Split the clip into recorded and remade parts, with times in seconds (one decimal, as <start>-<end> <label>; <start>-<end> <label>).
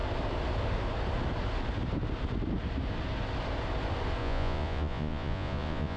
0.0-4.2 recorded; 4.2-6.0 remade